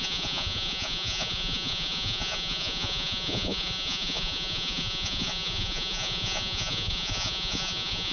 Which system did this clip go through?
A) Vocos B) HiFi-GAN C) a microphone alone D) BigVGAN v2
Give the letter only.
A